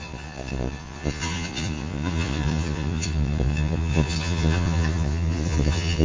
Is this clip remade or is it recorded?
remade